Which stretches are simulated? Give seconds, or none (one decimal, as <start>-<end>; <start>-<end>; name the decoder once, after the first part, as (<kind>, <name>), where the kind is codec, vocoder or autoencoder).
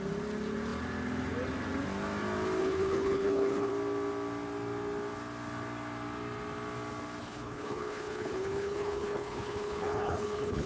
2.6-3.7 (codec, HILCodec); 7.2-10.7